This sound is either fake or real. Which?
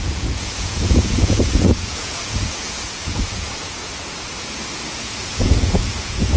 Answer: fake